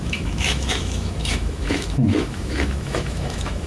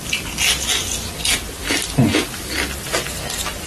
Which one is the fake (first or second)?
first